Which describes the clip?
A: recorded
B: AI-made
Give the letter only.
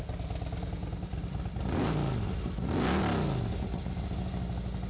A